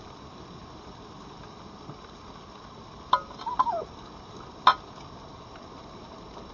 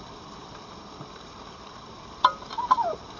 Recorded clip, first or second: first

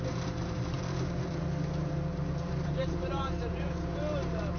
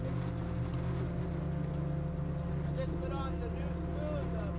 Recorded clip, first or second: second